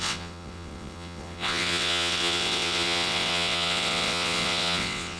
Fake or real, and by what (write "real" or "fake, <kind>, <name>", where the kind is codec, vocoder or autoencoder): fake, vocoder, WaveNeXt